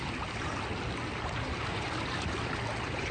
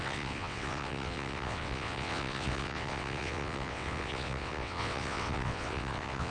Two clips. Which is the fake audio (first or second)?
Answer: second